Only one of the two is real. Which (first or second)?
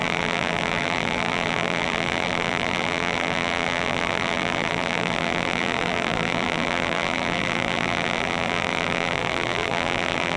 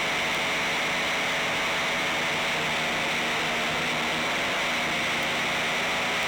second